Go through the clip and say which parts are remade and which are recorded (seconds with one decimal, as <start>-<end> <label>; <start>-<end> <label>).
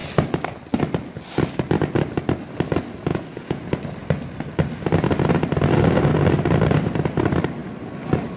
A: 0.0-3.1 recorded; 3.1-3.6 remade; 3.6-8.4 recorded